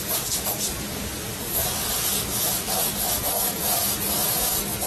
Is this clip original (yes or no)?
no